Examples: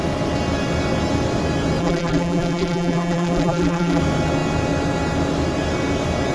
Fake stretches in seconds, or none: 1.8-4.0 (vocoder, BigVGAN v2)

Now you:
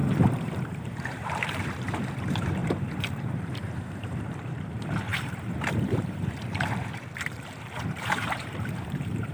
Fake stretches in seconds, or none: 0.0-9.3 (vocoder, BigVGAN v2)

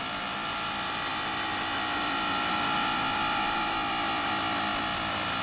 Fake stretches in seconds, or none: 0.0-4.7 (vocoder, BigVGAN v2)

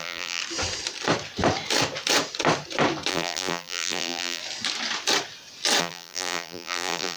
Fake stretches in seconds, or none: 0.0-0.4 (vocoder, BigVGAN v2); 3.1-4.4; 5.8-7.2

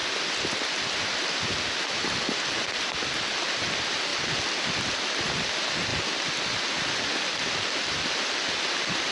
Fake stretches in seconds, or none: 0.0-5.9 (vocoder, BigVGAN v2); 8.2-9.1

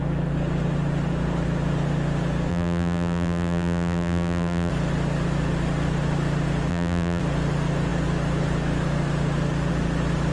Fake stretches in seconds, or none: 2.5-4.7 (vocoder, BigVGAN v2); 6.7-7.2